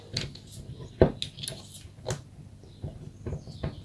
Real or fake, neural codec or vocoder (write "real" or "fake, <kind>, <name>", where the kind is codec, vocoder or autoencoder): real